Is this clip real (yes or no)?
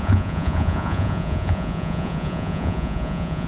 no